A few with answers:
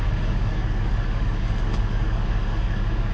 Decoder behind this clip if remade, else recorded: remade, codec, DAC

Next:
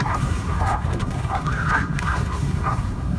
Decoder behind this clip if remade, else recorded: remade, codec, SNAC